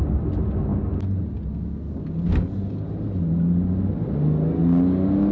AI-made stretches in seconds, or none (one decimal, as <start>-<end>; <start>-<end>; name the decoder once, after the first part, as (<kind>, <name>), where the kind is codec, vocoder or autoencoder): none